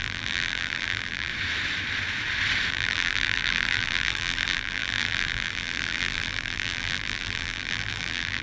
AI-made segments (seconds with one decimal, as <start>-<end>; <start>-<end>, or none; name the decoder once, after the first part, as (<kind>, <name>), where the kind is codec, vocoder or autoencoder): 0.0-1.3 (vocoder, BigVGAN v2); 2.7-8.4